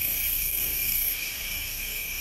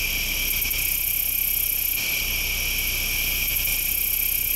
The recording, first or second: second